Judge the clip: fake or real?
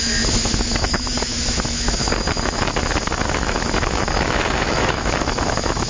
fake